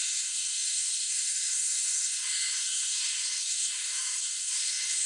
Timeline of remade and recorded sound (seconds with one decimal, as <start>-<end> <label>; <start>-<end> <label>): 0.0-5.1 remade